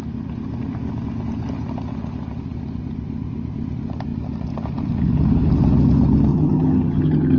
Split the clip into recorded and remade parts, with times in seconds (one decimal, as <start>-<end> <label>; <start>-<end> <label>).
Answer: 0.0-6.3 recorded; 6.3-7.4 remade